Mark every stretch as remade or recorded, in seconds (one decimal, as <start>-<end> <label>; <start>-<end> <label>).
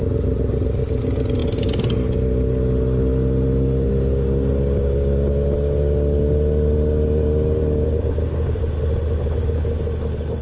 0.0-4.5 recorded; 4.5-8.6 remade; 8.6-10.4 recorded